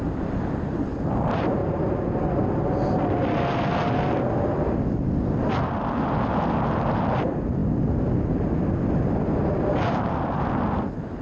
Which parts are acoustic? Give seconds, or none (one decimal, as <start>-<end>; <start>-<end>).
1.6-4.6; 7.6-9.5